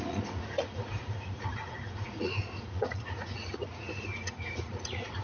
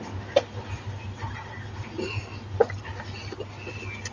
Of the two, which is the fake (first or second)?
first